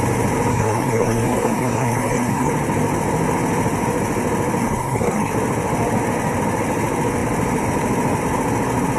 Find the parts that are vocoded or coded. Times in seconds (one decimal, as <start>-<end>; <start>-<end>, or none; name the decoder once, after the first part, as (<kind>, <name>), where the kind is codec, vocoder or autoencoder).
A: 0.5-2.5 (codec, SNAC); 4.6-5.3